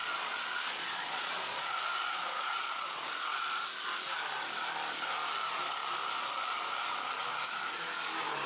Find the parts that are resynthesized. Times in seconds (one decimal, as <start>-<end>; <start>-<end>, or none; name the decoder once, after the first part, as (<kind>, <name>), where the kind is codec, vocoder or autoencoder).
0.0-3.0 (vocoder, Vocos)